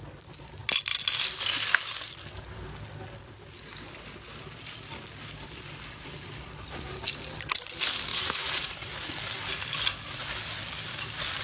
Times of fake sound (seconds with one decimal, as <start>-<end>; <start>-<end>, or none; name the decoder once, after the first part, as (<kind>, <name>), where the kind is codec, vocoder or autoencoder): 8.1-8.9 (vocoder, Vocos)

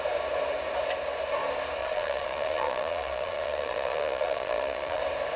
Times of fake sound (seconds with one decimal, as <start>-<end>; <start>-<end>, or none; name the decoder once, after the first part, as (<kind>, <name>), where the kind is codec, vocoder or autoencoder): 1.8-5.0 (vocoder, Vocos)

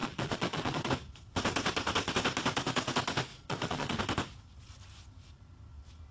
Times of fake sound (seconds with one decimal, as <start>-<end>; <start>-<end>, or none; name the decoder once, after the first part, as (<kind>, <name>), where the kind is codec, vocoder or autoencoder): 0.0-0.9 (vocoder, Vocos); 3.3-4.0

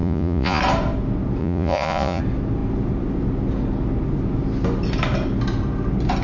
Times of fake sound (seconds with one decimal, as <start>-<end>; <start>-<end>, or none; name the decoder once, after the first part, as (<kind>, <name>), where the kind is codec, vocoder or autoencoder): 0.0-0.6 (vocoder, Vocos); 1.4-2.2

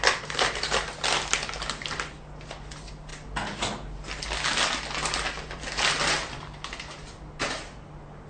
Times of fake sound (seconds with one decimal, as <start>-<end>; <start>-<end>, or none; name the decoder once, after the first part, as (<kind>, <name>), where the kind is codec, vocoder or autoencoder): none

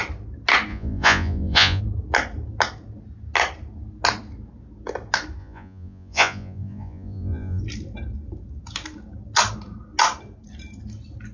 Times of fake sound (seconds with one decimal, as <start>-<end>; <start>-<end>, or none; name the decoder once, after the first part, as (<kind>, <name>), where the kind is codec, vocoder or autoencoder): 0.7-1.8 (vocoder, Vocos); 5.4-7.6

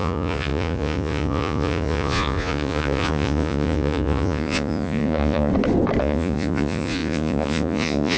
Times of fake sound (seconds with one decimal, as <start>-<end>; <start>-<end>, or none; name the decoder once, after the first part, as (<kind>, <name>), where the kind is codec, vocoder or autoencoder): 0.0-5.5 (vocoder, Vocos); 6.0-8.2

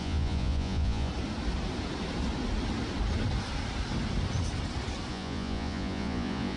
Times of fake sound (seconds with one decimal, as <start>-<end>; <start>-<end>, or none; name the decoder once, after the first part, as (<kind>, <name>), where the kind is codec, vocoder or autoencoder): 0.0-1.1 (vocoder, Vocos); 5.1-6.6